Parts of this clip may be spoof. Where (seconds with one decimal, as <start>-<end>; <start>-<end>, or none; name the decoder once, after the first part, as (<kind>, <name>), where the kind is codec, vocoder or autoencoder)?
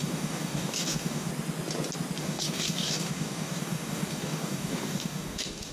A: 0.0-1.3 (codec, DAC); 2.2-5.7